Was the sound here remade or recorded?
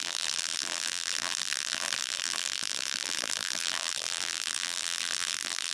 remade